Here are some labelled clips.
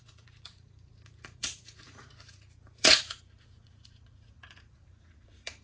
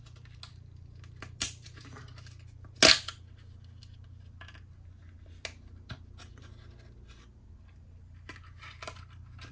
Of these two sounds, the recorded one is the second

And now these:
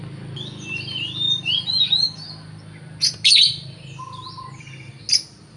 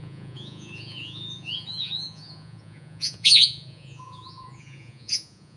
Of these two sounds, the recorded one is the first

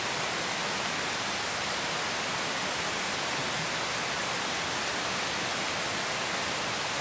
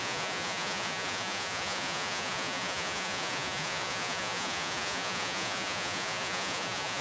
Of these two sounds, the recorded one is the first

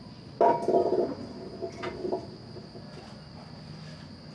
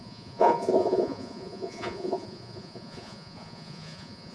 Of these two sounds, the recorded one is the first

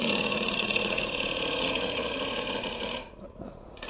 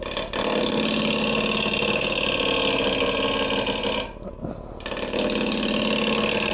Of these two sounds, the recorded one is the second